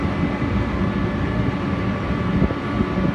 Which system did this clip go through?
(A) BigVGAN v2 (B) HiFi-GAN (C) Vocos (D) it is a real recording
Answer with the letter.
D